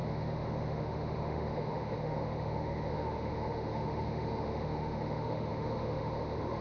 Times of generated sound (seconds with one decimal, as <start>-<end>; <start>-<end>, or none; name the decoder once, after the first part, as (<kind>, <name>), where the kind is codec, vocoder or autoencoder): 0.0-6.6 (autoencoder, DAC-VAE)